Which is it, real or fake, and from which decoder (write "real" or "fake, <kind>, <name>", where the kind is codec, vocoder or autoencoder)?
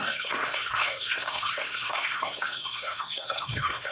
fake, codec, SNAC